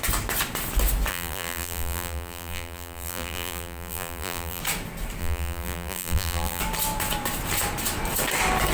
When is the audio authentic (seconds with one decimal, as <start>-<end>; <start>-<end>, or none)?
0.0-1.1; 4.6-5.2; 6.6-8.7